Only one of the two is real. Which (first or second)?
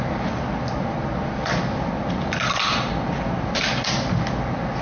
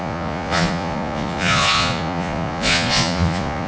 first